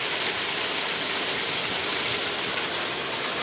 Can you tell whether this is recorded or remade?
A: recorded